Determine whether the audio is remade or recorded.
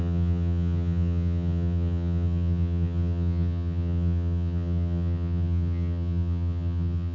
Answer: remade